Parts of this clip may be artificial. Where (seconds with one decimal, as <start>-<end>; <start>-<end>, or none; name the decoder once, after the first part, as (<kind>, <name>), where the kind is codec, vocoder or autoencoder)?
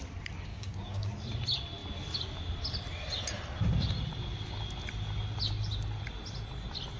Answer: 0.5-1.1 (codec, DAC)